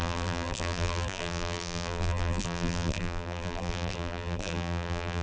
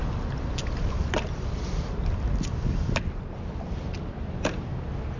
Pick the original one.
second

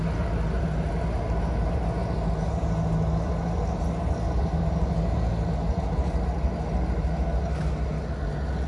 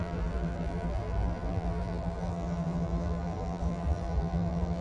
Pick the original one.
first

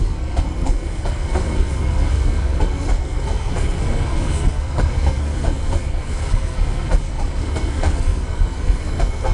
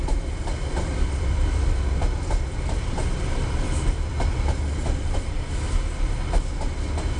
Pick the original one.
second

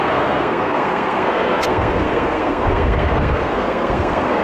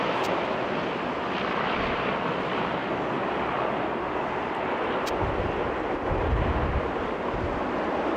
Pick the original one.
second